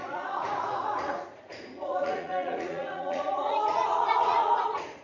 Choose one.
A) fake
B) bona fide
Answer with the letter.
A